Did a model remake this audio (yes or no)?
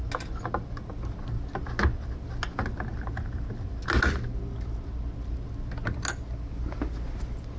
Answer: no